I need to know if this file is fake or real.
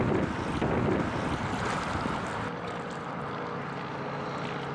real